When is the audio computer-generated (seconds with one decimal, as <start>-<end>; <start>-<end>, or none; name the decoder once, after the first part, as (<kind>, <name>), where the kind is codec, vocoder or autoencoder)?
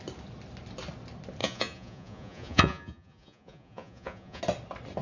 1.4-4.4 (vocoder, Vocos)